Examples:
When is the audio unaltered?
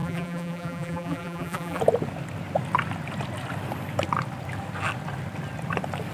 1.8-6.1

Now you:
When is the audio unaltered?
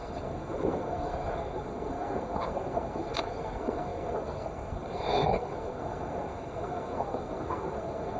none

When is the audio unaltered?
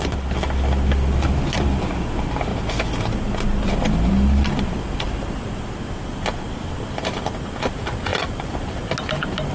0.0-9.5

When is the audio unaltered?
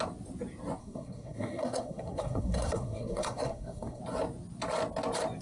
0.0-0.8; 4.0-5.4